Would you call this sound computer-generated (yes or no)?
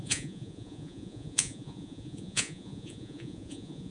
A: yes